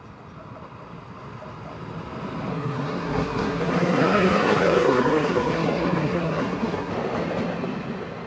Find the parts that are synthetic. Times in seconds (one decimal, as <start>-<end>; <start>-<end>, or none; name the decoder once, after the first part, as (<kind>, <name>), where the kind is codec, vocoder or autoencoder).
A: 2.5-6.9 (codec, SNAC)